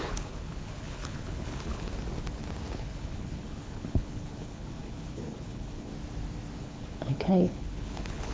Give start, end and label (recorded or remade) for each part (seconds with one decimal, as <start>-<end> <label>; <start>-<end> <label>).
0.0-1.9 remade; 1.9-2.7 recorded; 2.7-5.9 remade; 5.9-6.6 recorded; 6.6-8.3 remade